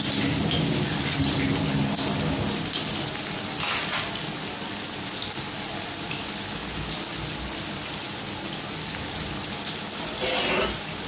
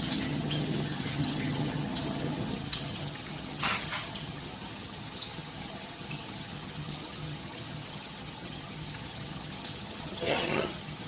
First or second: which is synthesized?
second